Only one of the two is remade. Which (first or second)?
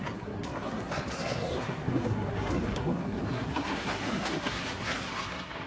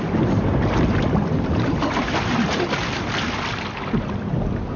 first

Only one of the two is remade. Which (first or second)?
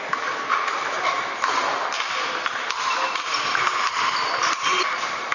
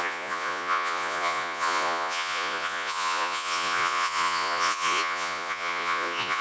second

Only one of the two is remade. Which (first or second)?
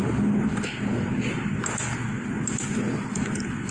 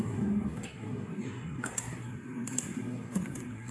second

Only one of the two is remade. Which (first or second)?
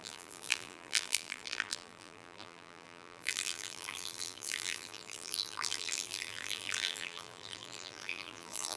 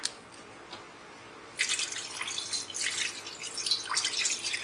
first